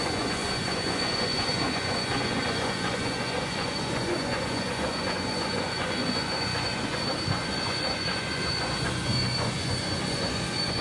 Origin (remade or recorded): remade